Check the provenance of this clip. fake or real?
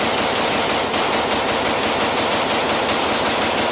real